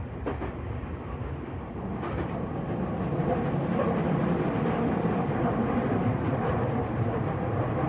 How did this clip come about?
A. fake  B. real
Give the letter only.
B